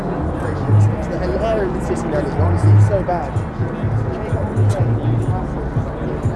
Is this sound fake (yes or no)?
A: no